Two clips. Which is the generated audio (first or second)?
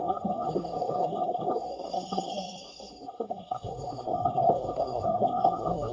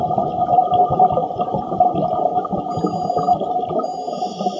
first